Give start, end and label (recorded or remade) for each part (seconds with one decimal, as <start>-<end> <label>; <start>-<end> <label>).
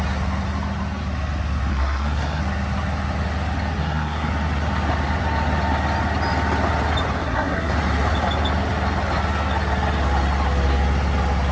0.0-1.7 recorded; 1.7-2.4 remade; 2.4-3.8 recorded; 3.8-4.3 remade; 4.3-7.2 recorded; 7.2-7.7 remade; 7.7-11.5 recorded